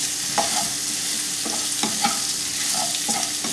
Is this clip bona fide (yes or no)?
yes